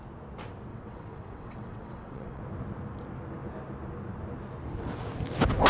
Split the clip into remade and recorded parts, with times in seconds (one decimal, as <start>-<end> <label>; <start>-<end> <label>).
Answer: 0.0-0.7 recorded; 0.7-2.4 remade; 2.4-5.7 recorded

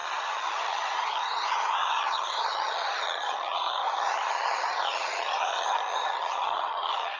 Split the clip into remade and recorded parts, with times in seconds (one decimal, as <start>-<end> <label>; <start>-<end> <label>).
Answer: 0.0-7.2 remade

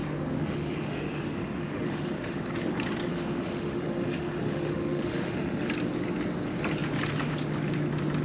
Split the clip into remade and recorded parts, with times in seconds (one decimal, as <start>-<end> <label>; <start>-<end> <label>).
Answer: 0.0-2.4 remade; 2.4-3.1 recorded; 3.1-5.7 remade; 5.7-8.2 recorded

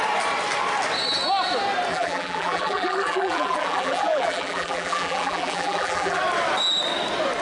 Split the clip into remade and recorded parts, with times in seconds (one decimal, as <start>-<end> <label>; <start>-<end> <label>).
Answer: 0.0-1.9 recorded; 1.9-6.2 remade; 6.2-7.4 recorded

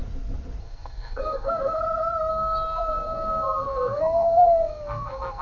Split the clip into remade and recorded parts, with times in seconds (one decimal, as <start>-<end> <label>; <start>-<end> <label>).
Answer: 0.0-0.6 recorded; 0.6-1.8 remade; 1.8-2.3 recorded; 2.3-5.4 remade